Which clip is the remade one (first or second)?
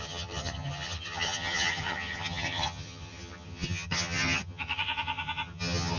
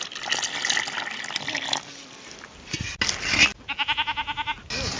first